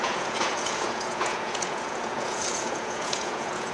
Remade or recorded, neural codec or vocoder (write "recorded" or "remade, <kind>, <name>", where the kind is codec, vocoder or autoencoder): remade, vocoder, Vocos